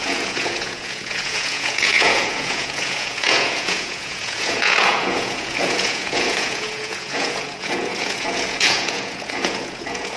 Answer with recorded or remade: remade